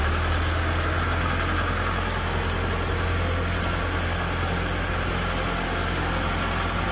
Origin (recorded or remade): recorded